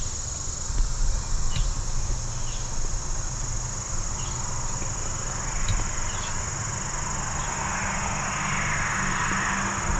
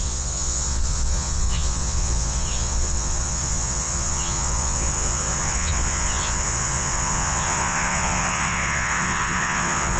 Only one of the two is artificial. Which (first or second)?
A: second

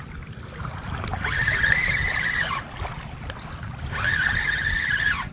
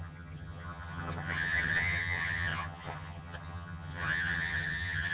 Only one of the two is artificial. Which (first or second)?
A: second